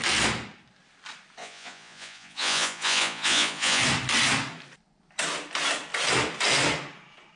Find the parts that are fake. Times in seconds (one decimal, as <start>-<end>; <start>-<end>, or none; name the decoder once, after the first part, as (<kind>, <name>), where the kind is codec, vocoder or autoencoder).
1.4-3.8 (vocoder, Vocos)